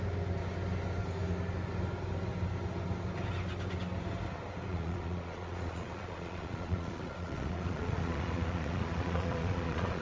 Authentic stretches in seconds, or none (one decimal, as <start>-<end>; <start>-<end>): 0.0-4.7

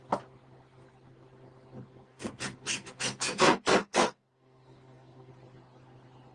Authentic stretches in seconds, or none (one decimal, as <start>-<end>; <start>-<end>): 0.0-1.9; 5.3-6.3

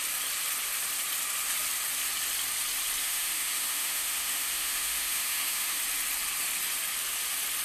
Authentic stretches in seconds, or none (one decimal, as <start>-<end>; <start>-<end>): 0.0-3.0; 5.8-7.6

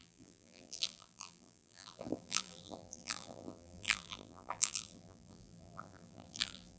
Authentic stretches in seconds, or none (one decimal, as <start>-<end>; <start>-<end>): none

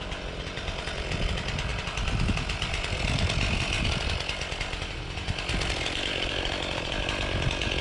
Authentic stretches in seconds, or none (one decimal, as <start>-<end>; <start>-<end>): 0.0-1.7; 6.3-7.8

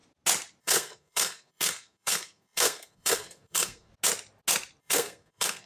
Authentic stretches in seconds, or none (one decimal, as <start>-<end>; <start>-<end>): 0.0-0.6; 3.9-4.8

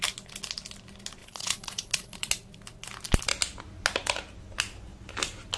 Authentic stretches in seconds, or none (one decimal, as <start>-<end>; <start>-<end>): 0.0-1.2; 2.3-5.6

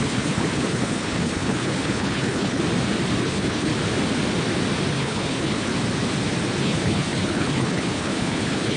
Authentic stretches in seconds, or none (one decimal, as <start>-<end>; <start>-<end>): 2.6-3.2; 3.7-4.9; 5.7-6.6